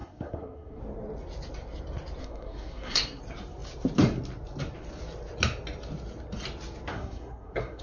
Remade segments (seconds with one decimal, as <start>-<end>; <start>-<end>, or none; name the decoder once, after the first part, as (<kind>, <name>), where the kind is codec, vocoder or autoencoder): 0.0-0.8 (codec, SNAC); 2.2-3.2; 6.9-7.8